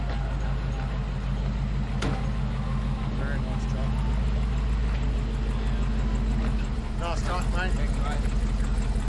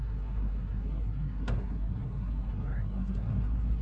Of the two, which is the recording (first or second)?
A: first